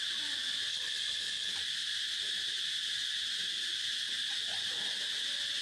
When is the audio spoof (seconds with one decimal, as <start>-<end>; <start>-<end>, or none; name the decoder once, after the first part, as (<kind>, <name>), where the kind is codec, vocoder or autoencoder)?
0.7-1.5 (codec, HILCodec)

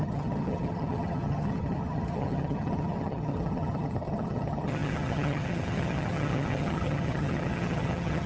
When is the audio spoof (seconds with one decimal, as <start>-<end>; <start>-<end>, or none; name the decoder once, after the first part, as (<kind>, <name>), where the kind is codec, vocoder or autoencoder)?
0.0-8.3 (vocoder, HiFi-GAN)

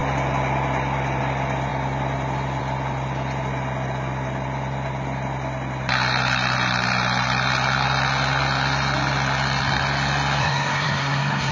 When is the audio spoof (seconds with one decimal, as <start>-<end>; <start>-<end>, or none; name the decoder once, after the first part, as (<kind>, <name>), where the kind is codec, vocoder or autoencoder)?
10.4-11.5 (codec, SNAC)

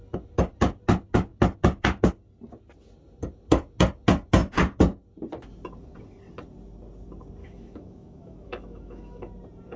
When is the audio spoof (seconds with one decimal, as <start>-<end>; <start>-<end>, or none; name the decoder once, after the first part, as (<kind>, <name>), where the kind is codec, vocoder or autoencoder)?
7.4-9.3 (autoencoder, DAC-VAE)

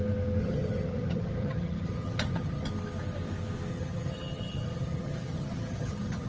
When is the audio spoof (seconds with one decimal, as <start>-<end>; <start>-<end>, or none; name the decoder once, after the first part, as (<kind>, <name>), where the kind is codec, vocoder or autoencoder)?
0.4-2.7 (vocoder, HiFi-GAN); 3.7-6.3